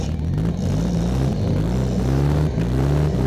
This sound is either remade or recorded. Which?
recorded